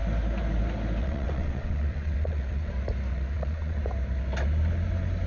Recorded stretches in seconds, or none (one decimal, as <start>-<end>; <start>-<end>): 0.0-1.0; 2.7-3.1; 3.8-5.3